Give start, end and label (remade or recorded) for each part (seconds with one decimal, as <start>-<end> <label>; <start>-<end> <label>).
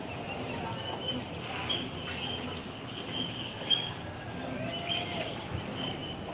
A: 0.0-2.6 recorded; 2.6-4.3 remade; 4.3-4.8 recorded; 4.8-5.3 remade; 5.3-6.3 recorded